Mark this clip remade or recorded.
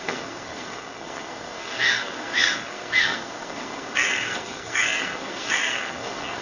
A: remade